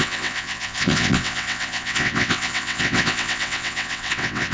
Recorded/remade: remade